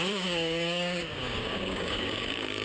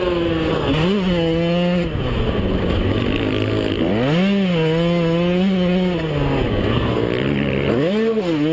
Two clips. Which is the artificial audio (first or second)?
first